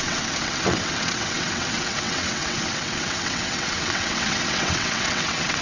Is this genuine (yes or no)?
no